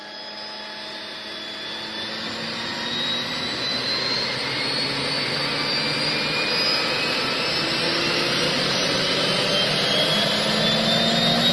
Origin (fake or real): real